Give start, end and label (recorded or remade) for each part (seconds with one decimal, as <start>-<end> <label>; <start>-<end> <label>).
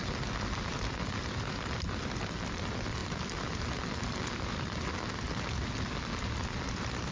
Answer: 0.0-7.1 recorded